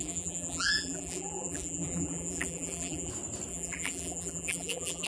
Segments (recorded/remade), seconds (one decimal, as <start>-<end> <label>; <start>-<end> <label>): 0.0-3.1 remade; 3.1-3.5 recorded; 3.5-5.1 remade